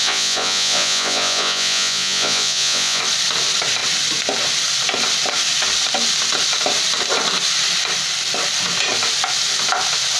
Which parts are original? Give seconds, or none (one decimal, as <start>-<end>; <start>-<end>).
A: 3.0-10.2